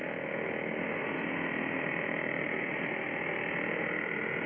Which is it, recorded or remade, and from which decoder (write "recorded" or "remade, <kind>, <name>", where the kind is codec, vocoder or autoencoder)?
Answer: recorded